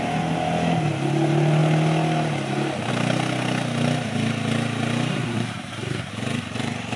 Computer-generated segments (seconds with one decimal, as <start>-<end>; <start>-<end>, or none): 5.1-6.1

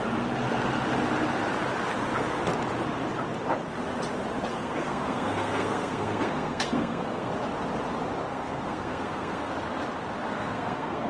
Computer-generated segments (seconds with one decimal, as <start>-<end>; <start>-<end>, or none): 4.5-7.3; 8.3-9.5; 10.3-11.1

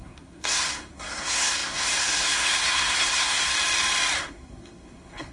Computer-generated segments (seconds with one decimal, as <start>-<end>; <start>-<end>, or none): 0.0-3.5; 4.2-5.3

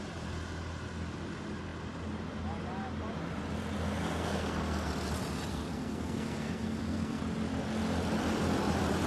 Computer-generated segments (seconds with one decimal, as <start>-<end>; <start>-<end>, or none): 4.0-4.9; 5.5-7.2

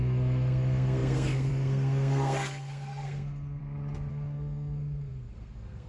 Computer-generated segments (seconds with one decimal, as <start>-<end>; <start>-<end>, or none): 0.0-3.6; 4.1-5.9